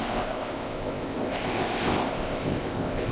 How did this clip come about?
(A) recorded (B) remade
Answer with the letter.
B